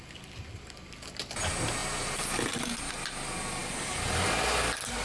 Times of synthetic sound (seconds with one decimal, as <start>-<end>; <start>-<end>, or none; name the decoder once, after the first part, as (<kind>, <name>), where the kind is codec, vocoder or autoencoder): none